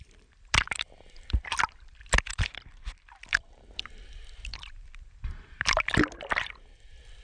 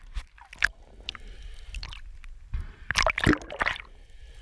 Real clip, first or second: second